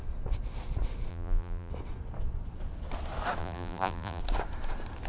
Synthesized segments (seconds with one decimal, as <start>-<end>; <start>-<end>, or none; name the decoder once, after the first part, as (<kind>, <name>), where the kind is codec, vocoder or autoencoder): 1.1-1.7 (vocoder, BigVGAN v2); 3.4-4.2